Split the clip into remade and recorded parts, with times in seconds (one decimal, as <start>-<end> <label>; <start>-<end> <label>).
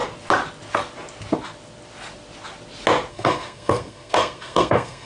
0.0-3.1 recorded; 3.1-5.1 remade